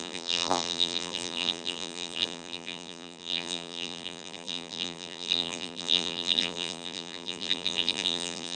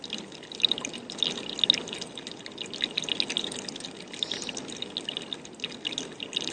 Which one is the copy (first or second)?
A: first